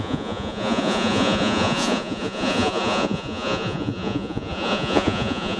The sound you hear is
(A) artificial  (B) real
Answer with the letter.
A